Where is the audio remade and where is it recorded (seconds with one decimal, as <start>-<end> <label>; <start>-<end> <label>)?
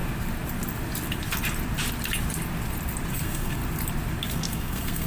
0.0-3.1 recorded; 3.1-3.6 remade; 3.6-4.3 recorded; 4.3-5.1 remade